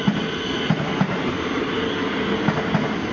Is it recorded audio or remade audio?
recorded